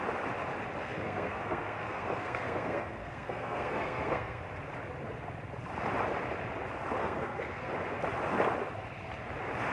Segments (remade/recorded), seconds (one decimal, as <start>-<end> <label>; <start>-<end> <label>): 0.0-0.8 recorded; 0.8-4.4 remade; 4.4-7.0 recorded; 7.0-7.7 remade; 7.7-9.7 recorded